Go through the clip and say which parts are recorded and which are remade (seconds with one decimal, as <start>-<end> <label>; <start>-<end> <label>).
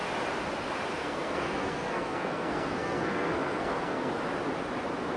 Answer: 0.0-1.0 recorded; 1.0-4.1 remade; 4.1-5.2 recorded